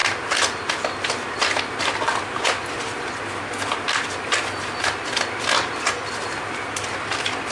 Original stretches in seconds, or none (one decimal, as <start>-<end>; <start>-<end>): 0.0-7.5